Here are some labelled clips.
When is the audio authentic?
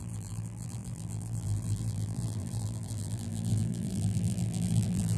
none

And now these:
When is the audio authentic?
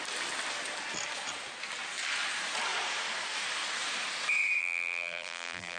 0.0-4.6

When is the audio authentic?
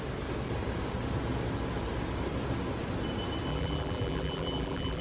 0.0-3.5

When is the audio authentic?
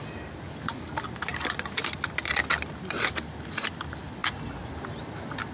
4.2-5.0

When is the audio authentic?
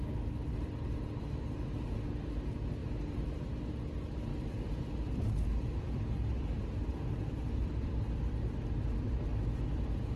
0.0-4.3; 5.0-6.9; 8.0-10.2